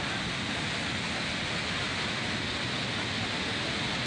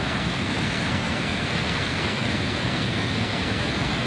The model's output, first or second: second